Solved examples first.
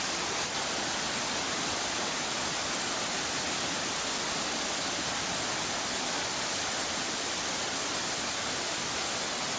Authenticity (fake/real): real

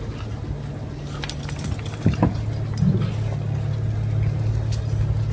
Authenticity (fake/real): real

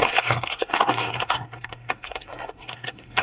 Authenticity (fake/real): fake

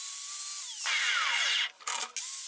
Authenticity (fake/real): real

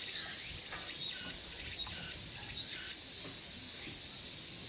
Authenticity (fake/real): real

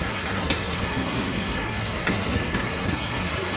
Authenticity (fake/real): fake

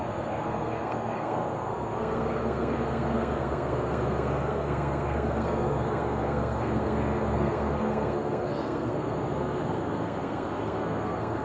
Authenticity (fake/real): fake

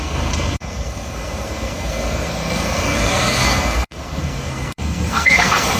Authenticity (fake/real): fake